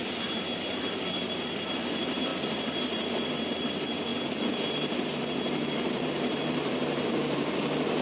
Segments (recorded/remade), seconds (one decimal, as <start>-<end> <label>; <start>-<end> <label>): 0.0-2.3 remade; 2.3-3.6 recorded; 3.6-8.0 remade